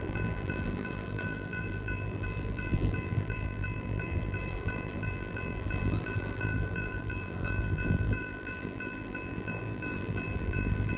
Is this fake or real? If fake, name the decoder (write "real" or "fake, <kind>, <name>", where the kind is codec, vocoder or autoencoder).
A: fake, vocoder, BigVGAN v2